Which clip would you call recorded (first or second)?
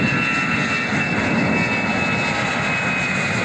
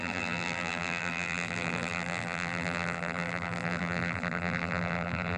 first